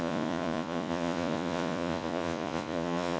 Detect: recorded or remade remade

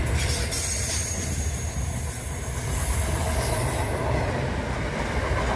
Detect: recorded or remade recorded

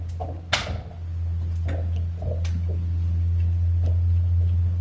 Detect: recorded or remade recorded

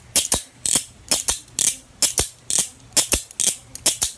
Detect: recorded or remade recorded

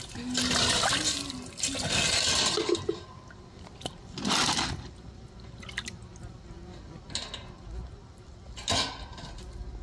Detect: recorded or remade recorded